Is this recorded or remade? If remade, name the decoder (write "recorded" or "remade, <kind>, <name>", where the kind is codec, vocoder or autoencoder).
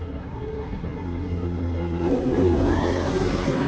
remade, codec, SNAC